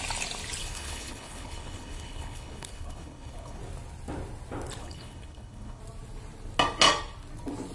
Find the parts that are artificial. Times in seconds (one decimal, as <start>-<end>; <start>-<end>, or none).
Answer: 0.6-3.6; 4.8-5.8